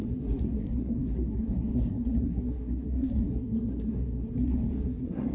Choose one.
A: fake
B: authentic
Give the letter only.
A